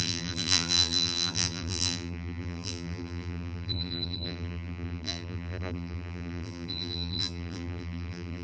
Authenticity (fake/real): fake